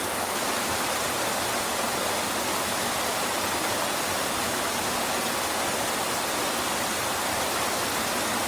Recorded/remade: recorded